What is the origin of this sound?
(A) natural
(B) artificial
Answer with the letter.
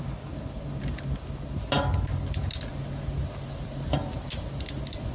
A